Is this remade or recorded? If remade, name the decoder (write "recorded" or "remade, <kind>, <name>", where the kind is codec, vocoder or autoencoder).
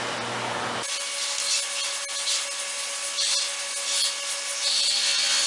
recorded